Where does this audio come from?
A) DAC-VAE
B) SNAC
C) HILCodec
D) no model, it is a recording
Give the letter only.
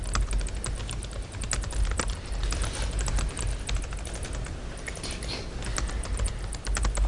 D